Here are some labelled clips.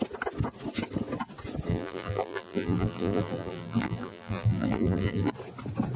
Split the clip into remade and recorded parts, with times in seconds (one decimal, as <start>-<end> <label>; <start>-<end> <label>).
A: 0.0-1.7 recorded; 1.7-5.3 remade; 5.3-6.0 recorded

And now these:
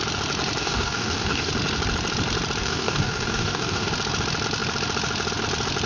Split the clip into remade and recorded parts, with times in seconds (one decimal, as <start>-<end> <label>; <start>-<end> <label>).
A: 0.0-0.6 recorded; 0.6-1.5 remade; 1.5-2.6 recorded; 2.6-3.9 remade; 3.9-5.9 recorded

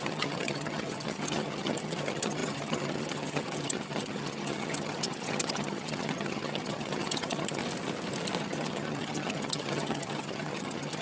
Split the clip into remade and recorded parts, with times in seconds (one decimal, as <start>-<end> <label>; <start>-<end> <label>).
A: 0.0-7.6 remade; 7.6-8.4 recorded; 8.4-11.0 remade

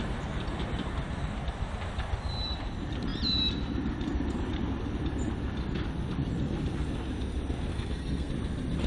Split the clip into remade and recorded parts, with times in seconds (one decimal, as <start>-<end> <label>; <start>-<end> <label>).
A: 0.0-7.7 recorded; 7.7-8.3 remade; 8.3-8.9 recorded

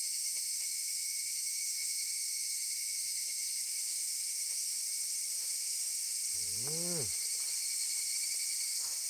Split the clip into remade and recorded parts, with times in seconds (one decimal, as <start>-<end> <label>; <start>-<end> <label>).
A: 0.0-4.8 remade; 4.8-5.4 recorded; 5.4-6.2 remade; 6.2-8.6 recorded; 8.6-9.1 remade

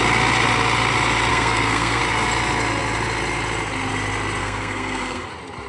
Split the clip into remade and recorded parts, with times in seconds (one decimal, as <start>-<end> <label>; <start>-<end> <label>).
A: 0.0-1.3 recorded; 1.3-2.0 remade; 2.0-4.4 recorded; 4.4-5.3 remade; 5.3-5.7 recorded

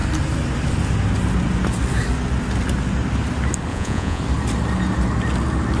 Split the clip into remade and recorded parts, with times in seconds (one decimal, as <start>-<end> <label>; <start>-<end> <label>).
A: 0.0-3.7 recorded; 3.7-4.2 remade; 4.2-5.8 recorded